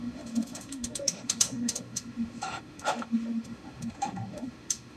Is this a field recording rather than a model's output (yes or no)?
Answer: no